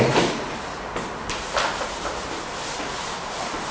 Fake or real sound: real